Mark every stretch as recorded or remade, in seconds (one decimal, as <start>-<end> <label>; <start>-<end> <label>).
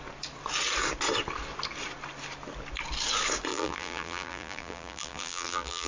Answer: 0.0-3.5 recorded; 3.5-5.9 remade